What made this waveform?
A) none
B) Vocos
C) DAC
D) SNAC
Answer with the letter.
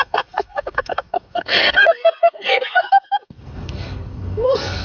D